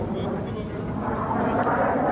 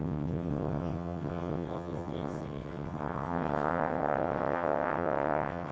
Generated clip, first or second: second